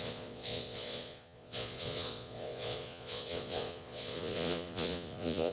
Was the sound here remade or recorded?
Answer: remade